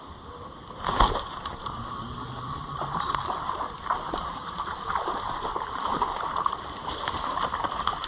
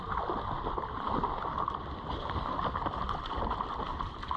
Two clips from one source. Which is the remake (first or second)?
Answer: first